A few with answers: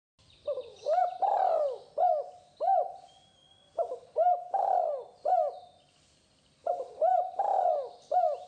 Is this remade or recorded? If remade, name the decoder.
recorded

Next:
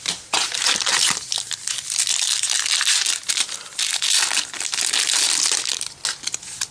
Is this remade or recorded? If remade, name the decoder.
recorded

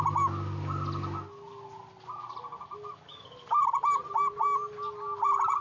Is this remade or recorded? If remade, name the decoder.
recorded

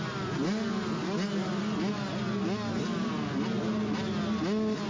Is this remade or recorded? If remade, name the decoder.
recorded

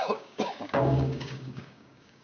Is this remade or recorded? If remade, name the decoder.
remade, codec, DAC